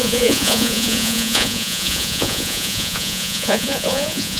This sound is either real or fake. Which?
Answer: fake